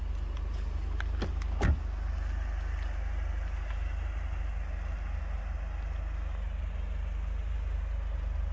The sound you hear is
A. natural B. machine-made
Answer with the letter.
A